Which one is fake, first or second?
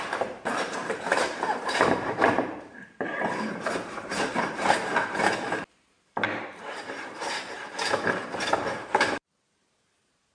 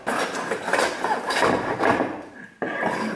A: first